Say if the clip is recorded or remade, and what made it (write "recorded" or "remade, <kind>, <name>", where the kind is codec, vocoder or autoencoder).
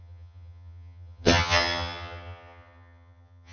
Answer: remade, vocoder, HiFi-GAN